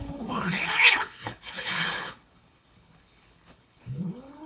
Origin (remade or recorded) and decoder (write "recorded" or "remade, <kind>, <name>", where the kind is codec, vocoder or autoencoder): remade, codec, HILCodec